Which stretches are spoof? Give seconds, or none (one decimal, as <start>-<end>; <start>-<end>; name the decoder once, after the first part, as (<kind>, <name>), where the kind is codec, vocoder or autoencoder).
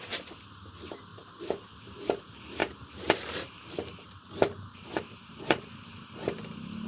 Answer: 1.1-2.2 (vocoder, BigVGAN v2); 2.6-6.9